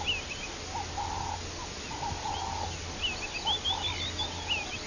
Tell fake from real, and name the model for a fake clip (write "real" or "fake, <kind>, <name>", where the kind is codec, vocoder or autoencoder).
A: real